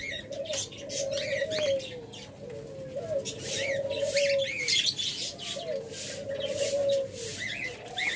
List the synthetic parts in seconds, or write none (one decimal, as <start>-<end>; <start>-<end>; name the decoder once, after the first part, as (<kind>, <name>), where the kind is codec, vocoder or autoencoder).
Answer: none